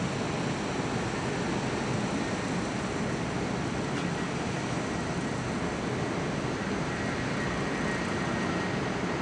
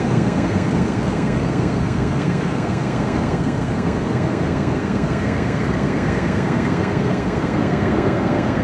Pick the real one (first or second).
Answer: first